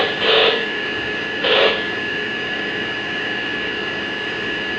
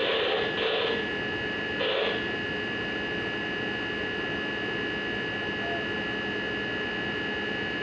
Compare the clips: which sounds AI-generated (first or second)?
first